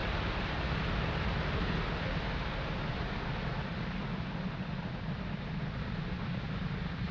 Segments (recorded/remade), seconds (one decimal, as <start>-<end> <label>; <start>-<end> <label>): 0.0-1.6 remade; 1.6-7.1 recorded